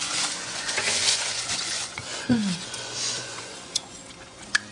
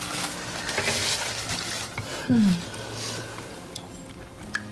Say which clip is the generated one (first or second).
first